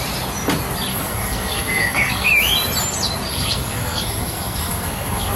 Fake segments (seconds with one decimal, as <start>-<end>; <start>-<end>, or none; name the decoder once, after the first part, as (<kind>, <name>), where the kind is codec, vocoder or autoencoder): 0.9-2.3 (codec, SNAC); 3.3-5.4